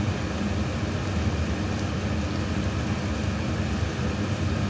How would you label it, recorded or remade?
recorded